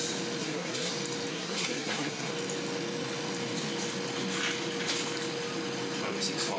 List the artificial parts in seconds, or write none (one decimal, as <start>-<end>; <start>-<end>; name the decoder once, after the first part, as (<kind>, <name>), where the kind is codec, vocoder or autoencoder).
0.4-0.9 (codec, SNAC); 1.3-2.3